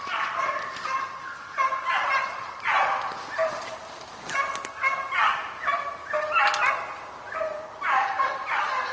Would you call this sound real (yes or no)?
yes